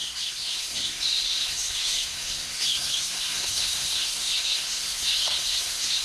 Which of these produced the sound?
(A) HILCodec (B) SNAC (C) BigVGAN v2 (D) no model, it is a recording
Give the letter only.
B